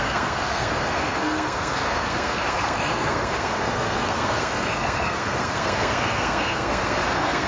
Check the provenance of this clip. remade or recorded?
remade